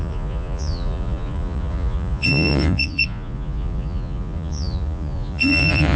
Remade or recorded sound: remade